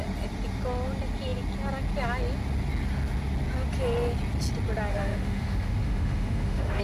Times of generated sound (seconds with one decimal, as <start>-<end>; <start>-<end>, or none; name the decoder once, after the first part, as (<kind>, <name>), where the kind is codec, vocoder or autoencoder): 4.9-6.8 (autoencoder, DAC-VAE)